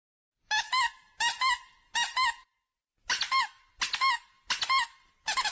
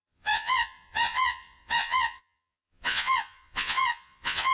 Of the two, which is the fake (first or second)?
second